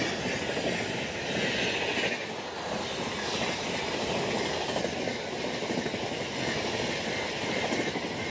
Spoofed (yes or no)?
no